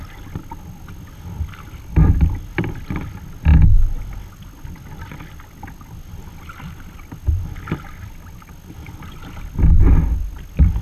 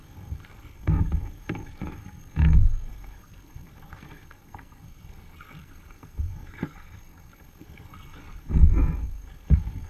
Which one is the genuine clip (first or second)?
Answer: first